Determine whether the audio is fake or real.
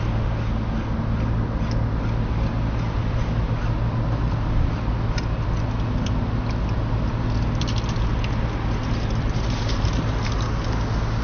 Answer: real